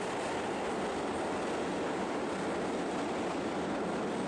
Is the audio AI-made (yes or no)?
no